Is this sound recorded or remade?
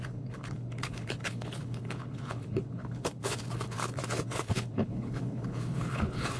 remade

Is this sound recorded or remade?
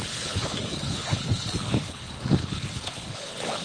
remade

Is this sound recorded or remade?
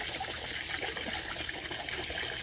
recorded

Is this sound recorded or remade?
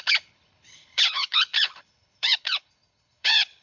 remade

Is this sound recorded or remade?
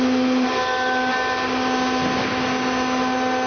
recorded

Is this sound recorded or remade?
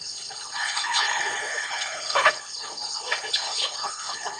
remade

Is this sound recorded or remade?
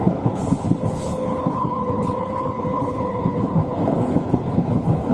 remade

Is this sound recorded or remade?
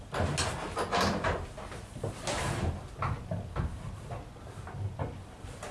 recorded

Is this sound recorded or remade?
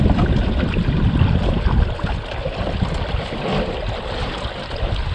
recorded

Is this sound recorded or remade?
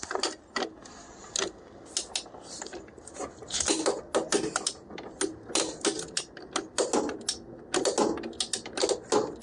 recorded